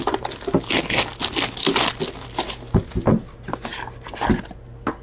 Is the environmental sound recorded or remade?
recorded